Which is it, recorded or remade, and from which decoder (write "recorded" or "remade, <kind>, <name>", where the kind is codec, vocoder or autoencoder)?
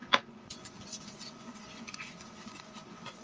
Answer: remade, vocoder, Vocos